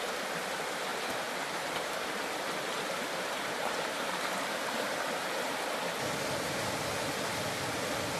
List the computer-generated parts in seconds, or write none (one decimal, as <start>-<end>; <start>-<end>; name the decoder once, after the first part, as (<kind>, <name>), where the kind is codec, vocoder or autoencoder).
0.9-5.6 (vocoder, BigVGAN v2)